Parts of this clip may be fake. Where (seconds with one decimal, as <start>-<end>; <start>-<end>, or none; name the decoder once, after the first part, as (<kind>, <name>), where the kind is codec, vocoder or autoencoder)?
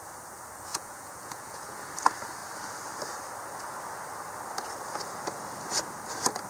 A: 0.7-1.9 (vocoder, Vocos)